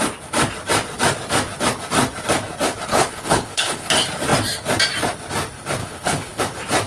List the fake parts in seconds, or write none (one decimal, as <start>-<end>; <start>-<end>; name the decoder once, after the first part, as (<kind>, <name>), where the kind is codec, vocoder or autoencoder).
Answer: 2.9-3.9 (codec, HILCodec); 5.8-6.4